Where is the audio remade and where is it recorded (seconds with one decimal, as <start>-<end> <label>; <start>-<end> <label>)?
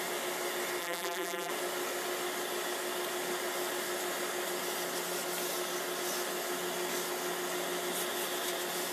0.0-0.8 recorded; 0.8-1.5 remade; 1.5-8.9 recorded